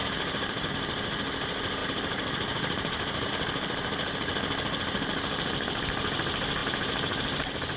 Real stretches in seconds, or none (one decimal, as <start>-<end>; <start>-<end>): 0.7-1.8; 3.3-7.8